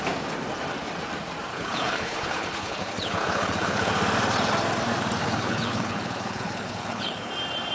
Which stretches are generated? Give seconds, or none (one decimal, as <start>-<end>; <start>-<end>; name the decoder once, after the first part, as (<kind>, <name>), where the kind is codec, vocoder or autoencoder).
1.5-3.9 (codec, HILCodec); 5.2-7.3